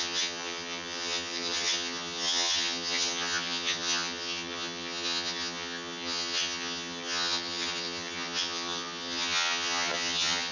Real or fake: fake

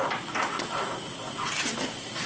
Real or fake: real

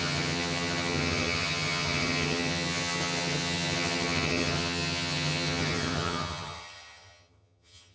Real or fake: fake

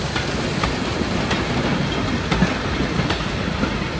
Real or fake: real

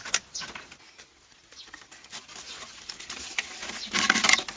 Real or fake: real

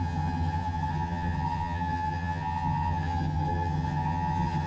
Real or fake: fake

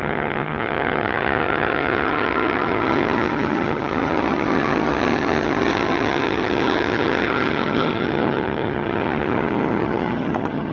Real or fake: fake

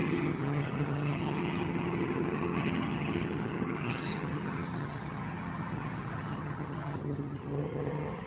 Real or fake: fake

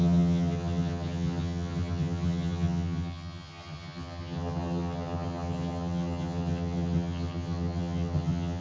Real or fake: fake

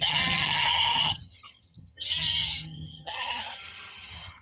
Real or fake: fake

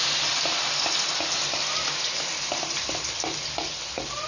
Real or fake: real